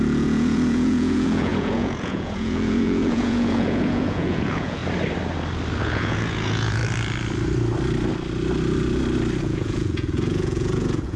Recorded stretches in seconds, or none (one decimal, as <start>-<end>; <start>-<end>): 4.8-5.8; 6.8-9.4